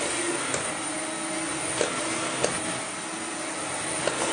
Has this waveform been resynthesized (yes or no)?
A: no